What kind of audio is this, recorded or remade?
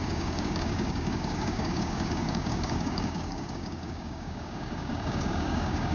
remade